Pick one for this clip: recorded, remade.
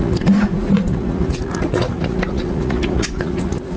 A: remade